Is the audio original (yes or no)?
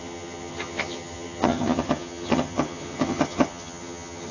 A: no